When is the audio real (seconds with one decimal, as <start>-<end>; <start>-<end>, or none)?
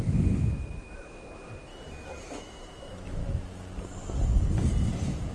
1.7-2.2; 3.2-5.3